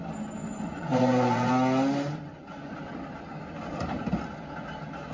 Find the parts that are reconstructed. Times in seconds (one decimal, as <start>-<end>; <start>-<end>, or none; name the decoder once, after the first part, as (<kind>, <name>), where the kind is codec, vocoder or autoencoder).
0.4-1.5 (vocoder, Vocos); 2.2-2.7